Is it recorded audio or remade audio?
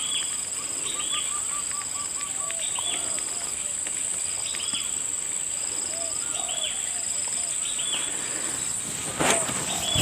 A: recorded